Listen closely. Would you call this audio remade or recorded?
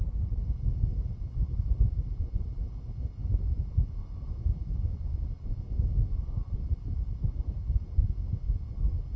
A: recorded